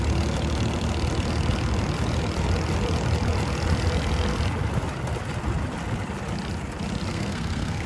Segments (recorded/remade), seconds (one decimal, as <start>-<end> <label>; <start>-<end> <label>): 0.0-7.1 recorded; 7.1-7.9 remade